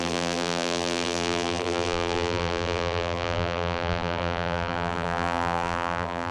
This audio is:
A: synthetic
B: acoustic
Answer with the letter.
A